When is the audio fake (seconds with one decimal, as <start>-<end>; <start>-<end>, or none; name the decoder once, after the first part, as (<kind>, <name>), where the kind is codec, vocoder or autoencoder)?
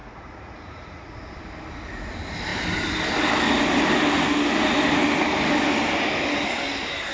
0.0-1.3 (vocoder, Vocos)